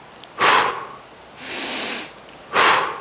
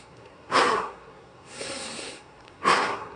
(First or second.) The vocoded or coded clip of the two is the second